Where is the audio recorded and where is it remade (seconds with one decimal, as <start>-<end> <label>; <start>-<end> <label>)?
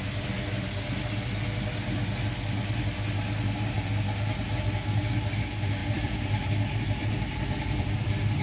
0.0-5.8 recorded; 5.8-6.5 remade; 6.5-7.0 recorded; 7.0-8.4 remade